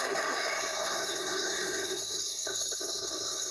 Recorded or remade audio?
remade